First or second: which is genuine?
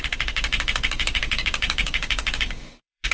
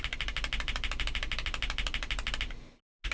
second